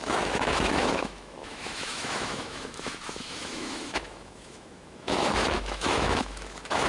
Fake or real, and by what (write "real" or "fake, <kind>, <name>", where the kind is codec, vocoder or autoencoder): fake, autoencoder, DAC-VAE